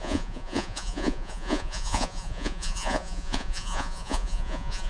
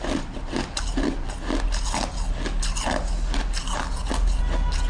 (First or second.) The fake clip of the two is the first